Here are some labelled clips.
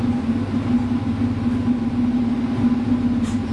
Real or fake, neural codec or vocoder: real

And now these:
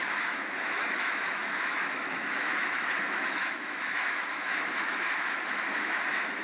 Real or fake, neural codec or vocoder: fake, autoencoder, DAC-VAE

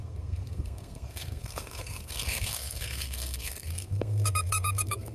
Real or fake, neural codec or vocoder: fake, codec, SNAC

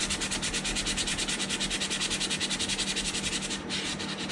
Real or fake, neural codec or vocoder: real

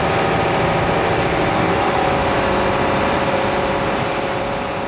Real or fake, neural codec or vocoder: real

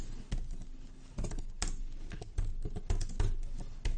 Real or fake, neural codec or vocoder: real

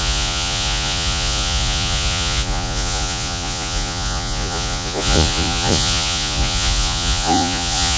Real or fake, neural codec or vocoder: fake, vocoder, Vocos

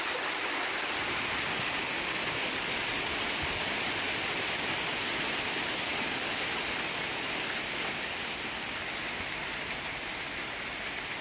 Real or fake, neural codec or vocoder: real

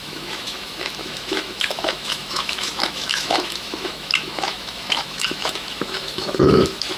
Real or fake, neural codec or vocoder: fake, autoencoder, DAC-VAE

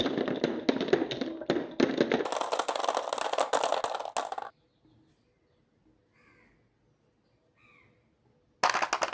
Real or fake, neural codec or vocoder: real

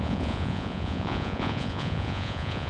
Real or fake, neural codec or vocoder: fake, vocoder, Vocos